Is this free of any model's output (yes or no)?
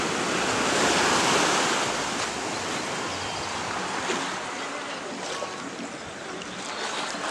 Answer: yes